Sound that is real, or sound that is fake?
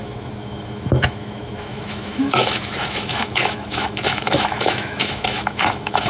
fake